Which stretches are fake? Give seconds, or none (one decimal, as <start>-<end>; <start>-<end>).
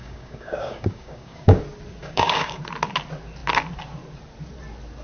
0.0-1.6; 2.0-2.6